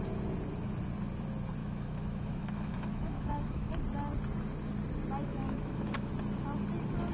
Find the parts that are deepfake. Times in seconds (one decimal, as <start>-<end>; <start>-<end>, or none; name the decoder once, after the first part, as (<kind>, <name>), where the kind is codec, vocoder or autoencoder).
1.6-3.7 (autoencoder, DAC-VAE); 5.2-6.1